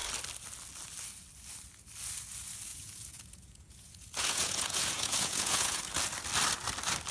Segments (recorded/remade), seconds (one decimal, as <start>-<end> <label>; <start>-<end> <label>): 0.0-2.7 recorded; 2.7-5.8 remade; 5.8-7.1 recorded